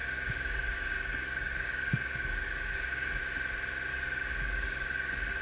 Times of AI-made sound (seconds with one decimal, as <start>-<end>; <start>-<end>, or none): 0.0-3.2; 3.9-5.4